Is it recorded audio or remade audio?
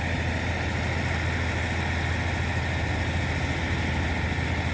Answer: recorded